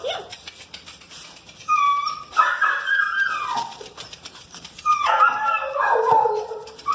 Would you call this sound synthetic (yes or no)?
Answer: no